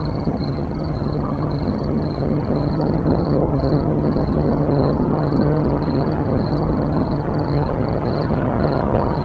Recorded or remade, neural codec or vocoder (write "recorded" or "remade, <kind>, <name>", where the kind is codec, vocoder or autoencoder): remade, vocoder, HiFi-GAN